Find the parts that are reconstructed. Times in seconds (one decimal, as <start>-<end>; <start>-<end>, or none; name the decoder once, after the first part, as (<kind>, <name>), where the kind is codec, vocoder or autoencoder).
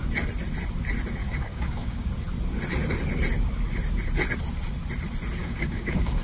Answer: 1.2-2.1 (codec, DAC); 5.4-6.2